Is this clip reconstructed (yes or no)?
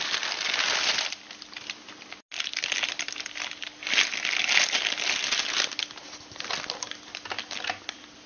no